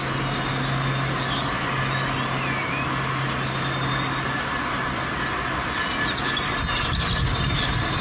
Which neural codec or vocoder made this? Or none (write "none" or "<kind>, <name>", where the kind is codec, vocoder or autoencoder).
none